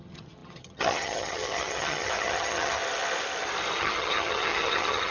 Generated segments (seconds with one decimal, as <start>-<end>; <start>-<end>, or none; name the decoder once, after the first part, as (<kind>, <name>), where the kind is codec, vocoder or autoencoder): 0.0-2.8 (vocoder, HiFi-GAN); 3.8-5.1